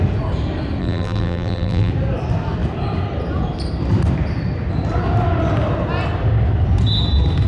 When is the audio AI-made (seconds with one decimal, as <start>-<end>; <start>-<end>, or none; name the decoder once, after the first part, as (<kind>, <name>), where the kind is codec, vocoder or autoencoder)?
0.8-1.9 (vocoder, BigVGAN v2)